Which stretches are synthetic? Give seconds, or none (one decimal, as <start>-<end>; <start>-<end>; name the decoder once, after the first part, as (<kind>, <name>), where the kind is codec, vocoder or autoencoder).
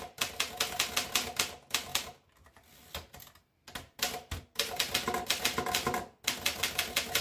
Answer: none